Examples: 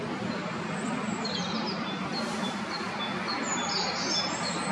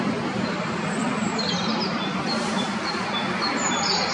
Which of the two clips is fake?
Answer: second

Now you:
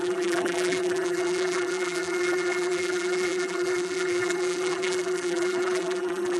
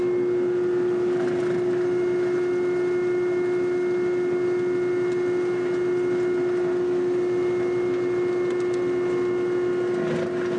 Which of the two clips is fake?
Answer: first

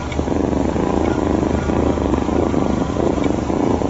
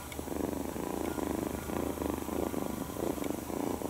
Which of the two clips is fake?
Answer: first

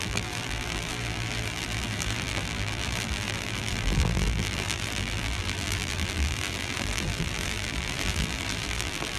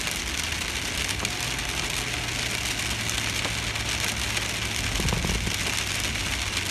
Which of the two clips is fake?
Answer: first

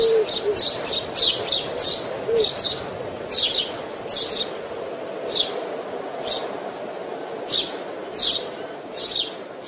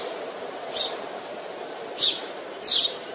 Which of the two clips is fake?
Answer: second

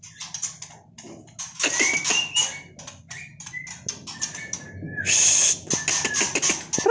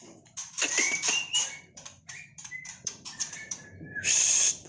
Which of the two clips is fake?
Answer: second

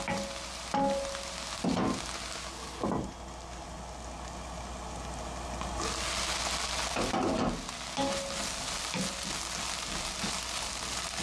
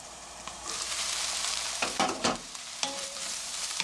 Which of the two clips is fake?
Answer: second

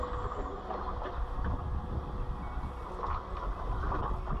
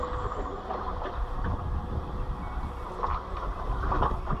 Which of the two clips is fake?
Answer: second